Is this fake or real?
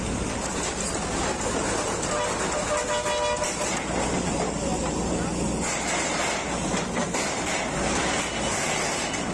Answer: real